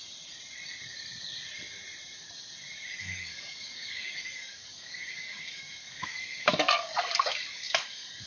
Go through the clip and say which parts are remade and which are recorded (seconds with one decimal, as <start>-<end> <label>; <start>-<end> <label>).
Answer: 0.0-3.0 recorded; 3.0-8.3 remade